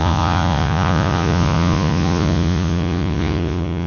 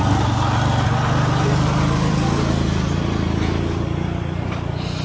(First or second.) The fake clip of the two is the first